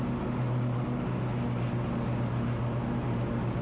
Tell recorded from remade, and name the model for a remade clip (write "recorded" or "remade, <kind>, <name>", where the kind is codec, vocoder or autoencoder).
recorded